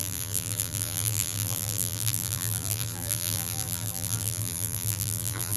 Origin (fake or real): fake